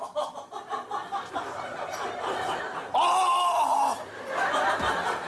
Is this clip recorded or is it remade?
recorded